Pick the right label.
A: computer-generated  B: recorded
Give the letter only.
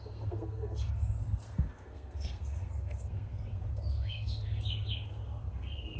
A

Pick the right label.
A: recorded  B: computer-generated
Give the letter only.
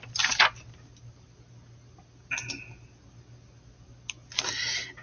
A